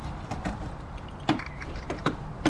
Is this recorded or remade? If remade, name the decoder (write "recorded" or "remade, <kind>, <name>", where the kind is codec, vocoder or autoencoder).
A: remade, vocoder, BigVGAN v2